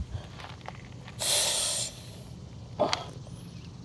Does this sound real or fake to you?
real